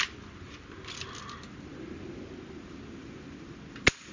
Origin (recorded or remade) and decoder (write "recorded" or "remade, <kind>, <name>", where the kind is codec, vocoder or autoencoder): recorded